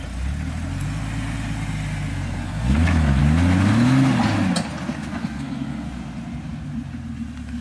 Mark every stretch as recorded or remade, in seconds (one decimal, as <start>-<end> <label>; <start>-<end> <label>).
0.0-2.1 recorded; 2.1-3.2 remade; 3.2-5.1 recorded; 5.1-5.9 remade; 5.9-7.6 recorded

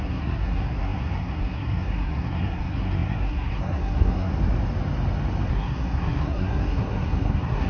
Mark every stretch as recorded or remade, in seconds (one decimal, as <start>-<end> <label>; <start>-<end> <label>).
0.0-4.3 remade; 4.3-5.5 recorded; 5.5-7.7 remade

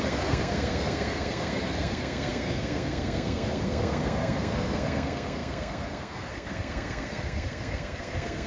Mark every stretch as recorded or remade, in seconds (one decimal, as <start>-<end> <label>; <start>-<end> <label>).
0.0-8.5 remade

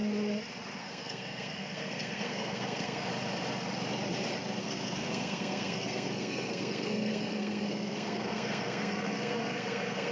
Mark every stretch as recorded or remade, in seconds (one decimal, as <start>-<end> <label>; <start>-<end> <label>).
0.0-0.8 recorded; 0.8-3.1 remade; 3.1-4.6 recorded; 4.6-10.1 remade